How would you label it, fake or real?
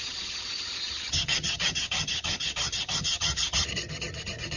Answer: fake